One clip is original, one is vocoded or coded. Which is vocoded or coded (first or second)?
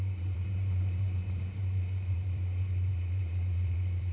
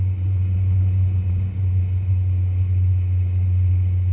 first